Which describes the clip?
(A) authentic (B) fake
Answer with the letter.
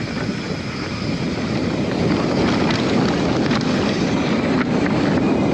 A